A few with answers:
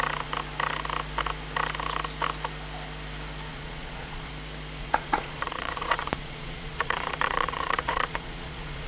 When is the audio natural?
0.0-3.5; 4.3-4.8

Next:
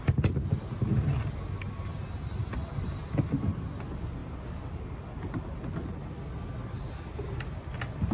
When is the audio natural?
0.0-8.1